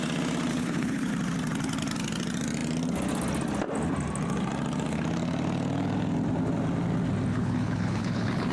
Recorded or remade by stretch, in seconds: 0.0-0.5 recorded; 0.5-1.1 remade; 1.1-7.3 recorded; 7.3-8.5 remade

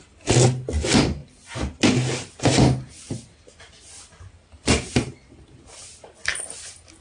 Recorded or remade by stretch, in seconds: 0.0-7.0 recorded

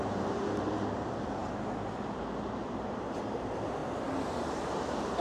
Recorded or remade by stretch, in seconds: 0.0-1.4 remade; 1.4-2.7 recorded; 2.7-3.8 remade; 3.8-4.5 recorded; 4.5-5.2 remade

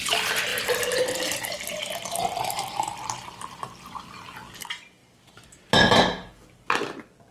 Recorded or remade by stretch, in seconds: 0.0-7.3 recorded

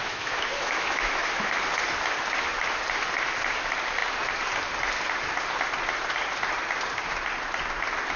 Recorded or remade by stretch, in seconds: 0.0-1.6 remade; 1.6-8.2 recorded

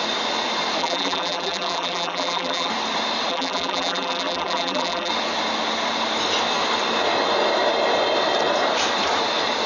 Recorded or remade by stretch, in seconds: 0.0-0.8 recorded; 0.8-2.7 remade; 2.7-3.3 recorded; 3.3-5.1 remade; 5.1-9.7 recorded

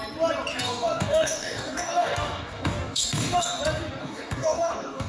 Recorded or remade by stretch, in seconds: 0.0-0.5 recorded; 0.5-3.6 remade; 3.6-4.0 recorded; 4.0-5.1 remade

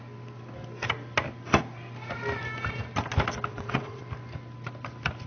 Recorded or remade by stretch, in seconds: 0.0-3.5 recorded; 3.5-4.0 remade; 4.0-5.3 recorded